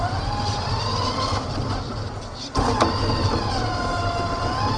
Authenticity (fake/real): real